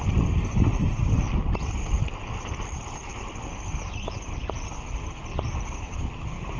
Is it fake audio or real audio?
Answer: real